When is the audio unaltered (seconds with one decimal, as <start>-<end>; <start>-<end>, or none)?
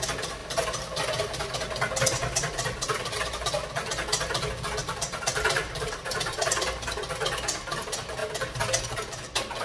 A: 0.0-4.8; 6.4-9.6